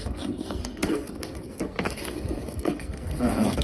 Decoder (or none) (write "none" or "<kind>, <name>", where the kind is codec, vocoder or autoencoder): codec, SNAC